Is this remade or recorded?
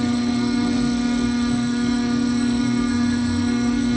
remade